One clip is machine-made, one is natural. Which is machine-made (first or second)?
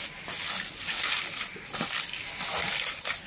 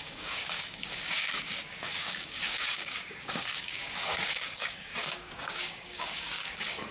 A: second